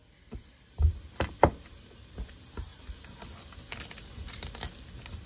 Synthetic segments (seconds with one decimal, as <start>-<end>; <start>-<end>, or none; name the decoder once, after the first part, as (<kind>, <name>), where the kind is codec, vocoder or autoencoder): none